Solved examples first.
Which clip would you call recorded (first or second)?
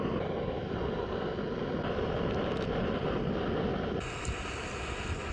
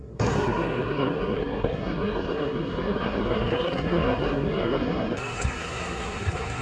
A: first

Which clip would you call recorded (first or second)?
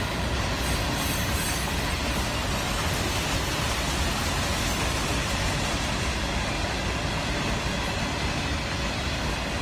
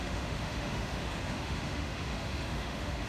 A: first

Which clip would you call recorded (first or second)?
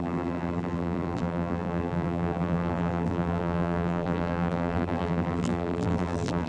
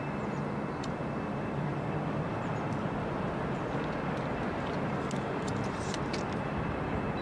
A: second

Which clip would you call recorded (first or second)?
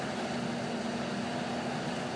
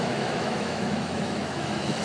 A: first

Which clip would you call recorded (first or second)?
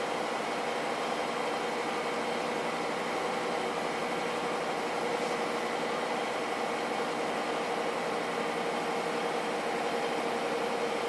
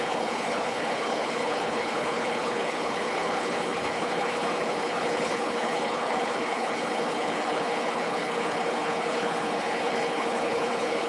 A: first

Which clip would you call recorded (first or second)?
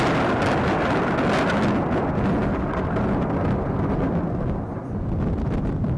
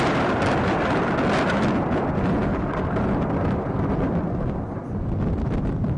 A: first